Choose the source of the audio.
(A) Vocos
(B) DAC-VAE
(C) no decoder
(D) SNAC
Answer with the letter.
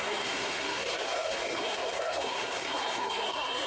D